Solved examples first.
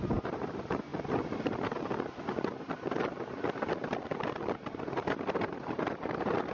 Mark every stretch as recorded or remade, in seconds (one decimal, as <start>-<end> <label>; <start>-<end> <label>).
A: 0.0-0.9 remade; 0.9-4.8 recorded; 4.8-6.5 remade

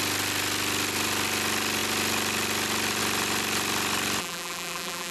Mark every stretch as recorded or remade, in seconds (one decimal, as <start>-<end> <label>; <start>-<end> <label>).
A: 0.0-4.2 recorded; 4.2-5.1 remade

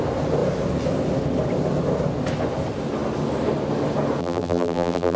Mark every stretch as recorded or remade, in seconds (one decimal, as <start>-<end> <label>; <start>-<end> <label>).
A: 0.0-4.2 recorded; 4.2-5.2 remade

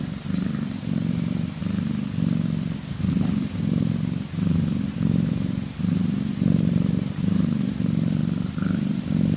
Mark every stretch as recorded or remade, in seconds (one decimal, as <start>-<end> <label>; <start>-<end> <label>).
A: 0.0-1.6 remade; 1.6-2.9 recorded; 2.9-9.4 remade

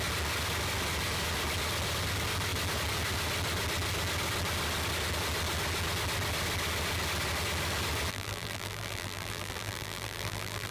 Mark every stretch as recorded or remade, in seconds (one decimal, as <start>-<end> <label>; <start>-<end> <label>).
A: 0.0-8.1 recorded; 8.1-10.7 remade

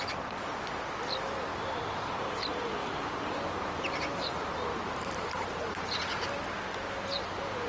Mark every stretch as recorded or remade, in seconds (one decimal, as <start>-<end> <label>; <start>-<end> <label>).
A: 0.0-2.8 recorded; 2.8-5.6 remade; 5.6-6.7 recorded; 6.7-7.7 remade

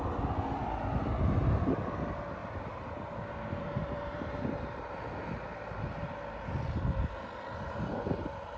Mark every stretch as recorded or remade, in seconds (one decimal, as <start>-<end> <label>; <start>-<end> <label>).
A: 0.0-2.4 recorded; 2.4-4.4 remade; 4.4-8.6 recorded

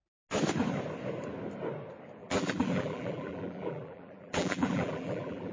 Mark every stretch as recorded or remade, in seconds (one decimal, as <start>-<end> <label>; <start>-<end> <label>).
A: 0.0-2.2 recorded; 2.2-5.5 remade